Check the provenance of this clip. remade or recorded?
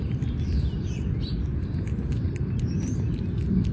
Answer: recorded